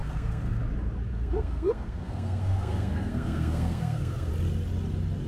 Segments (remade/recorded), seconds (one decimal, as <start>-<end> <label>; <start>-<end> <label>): 0.0-0.6 remade; 0.6-1.1 recorded; 1.1-4.3 remade; 4.3-5.3 recorded